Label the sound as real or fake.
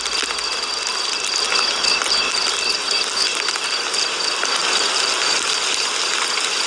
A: real